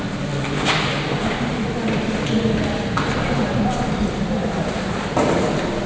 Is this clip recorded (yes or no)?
yes